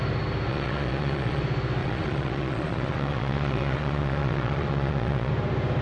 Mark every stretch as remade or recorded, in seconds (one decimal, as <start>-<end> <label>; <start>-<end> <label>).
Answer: 0.0-0.5 recorded; 0.5-1.4 remade; 1.4-1.8 recorded; 1.8-5.3 remade; 5.3-5.8 recorded